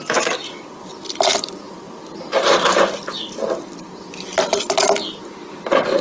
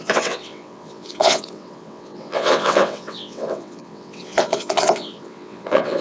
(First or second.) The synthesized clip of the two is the second